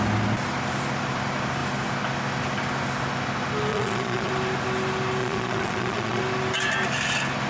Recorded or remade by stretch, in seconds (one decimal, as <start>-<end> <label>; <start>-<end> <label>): 0.0-3.7 recorded; 3.7-4.3 remade; 4.3-5.2 recorded; 5.2-6.2 remade; 6.2-7.5 recorded